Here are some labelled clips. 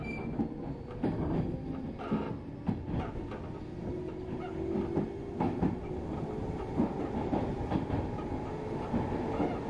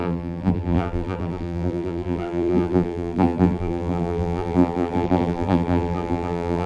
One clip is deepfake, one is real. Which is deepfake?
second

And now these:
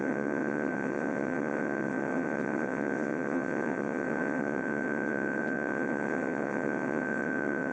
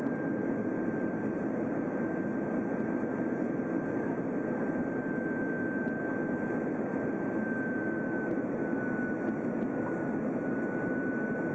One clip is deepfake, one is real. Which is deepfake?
first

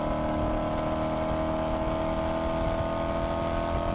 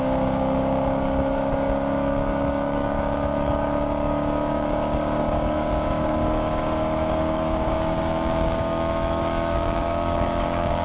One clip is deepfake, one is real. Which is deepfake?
second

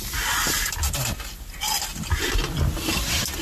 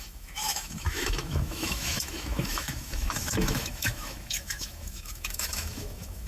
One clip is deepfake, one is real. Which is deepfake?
second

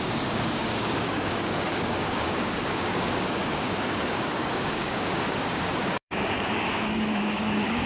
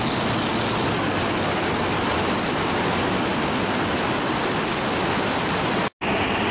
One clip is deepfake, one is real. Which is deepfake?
first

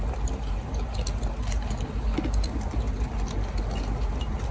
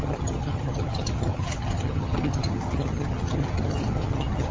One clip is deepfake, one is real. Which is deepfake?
second